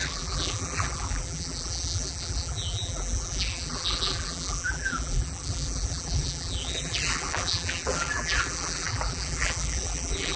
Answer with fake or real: fake